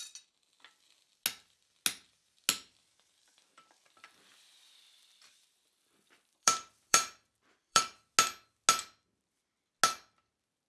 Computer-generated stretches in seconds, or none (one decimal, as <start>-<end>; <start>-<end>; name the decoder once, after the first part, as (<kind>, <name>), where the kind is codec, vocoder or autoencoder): 4.3-7.8 (vocoder, BigVGAN v2)